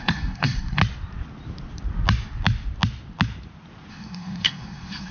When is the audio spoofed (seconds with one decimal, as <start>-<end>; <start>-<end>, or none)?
0.0-0.8; 3.9-5.1